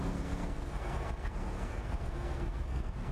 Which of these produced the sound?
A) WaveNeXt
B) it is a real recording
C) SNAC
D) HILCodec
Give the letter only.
C